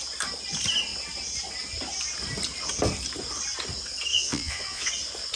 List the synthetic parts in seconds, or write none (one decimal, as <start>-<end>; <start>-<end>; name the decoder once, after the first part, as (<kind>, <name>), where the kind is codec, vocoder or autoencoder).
4.1-4.9 (vocoder, Vocos)